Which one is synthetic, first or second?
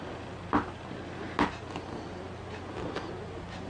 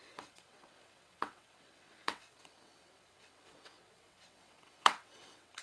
second